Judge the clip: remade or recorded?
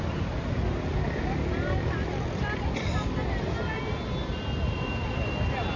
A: recorded